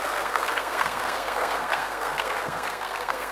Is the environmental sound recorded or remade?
remade